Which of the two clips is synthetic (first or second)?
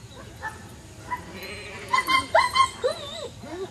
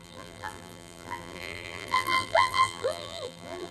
second